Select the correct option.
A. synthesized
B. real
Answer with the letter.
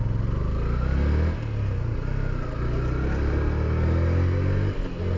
B